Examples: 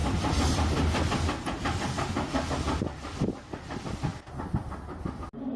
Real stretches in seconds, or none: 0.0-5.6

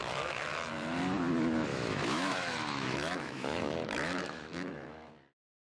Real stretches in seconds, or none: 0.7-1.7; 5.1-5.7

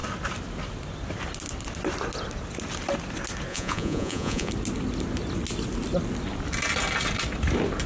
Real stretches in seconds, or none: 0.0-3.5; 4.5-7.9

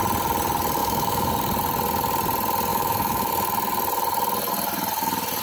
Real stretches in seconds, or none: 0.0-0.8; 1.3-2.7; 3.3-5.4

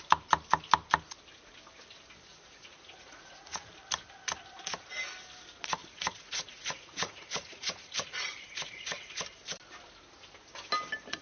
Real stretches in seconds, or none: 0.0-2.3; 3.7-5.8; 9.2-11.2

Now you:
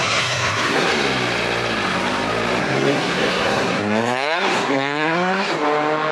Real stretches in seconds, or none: 0.9-2.6; 5.5-6.1

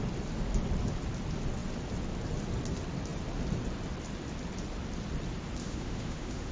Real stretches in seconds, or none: 0.0-5.6

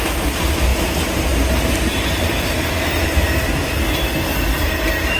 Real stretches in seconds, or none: 0.0-5.2